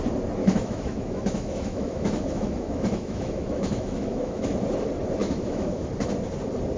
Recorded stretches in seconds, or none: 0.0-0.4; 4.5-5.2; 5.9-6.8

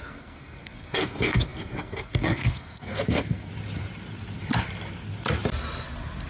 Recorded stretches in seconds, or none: 3.5-6.3

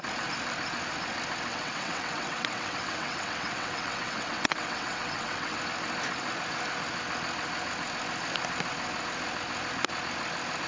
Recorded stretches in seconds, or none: 0.0-1.5; 5.6-10.7

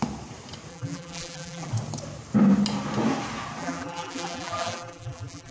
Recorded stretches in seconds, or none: 0.0-0.7; 1.7-3.6

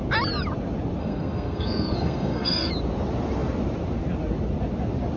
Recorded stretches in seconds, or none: 0.0-1.0; 2.7-5.2

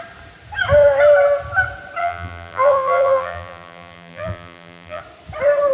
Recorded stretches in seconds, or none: 0.0-2.0; 5.0-5.7

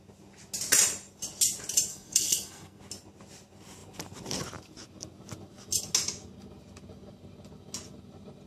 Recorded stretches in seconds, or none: 0.0-1.9; 2.8-8.5